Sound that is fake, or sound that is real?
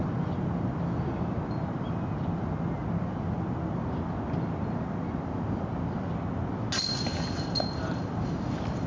real